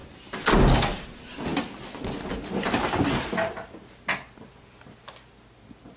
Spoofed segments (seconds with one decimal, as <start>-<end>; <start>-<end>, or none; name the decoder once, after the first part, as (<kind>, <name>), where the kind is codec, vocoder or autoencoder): none